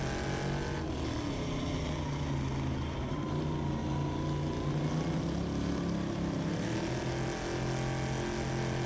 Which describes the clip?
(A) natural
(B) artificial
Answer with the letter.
A